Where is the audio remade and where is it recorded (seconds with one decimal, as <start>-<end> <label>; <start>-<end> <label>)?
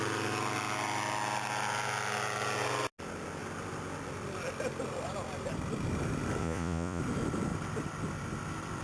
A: 0.0-6.4 recorded; 6.4-7.0 remade; 7.0-8.8 recorded